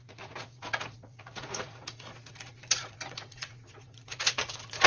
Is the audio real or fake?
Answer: fake